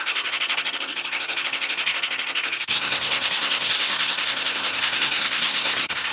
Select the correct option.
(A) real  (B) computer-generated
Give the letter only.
B